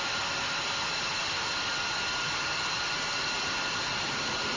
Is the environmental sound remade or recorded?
remade